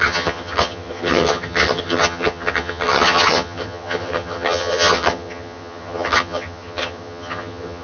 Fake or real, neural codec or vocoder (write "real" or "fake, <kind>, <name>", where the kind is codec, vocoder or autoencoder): fake, vocoder, HiFi-GAN